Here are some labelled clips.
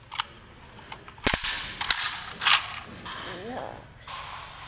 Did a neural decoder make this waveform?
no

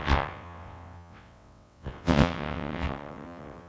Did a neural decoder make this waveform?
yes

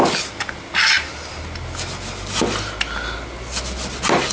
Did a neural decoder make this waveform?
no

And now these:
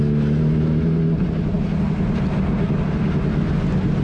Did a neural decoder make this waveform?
no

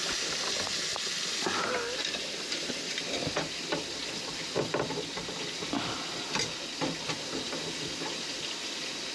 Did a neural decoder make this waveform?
no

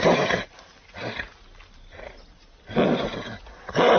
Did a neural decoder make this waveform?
no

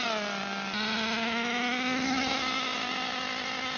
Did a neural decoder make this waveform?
no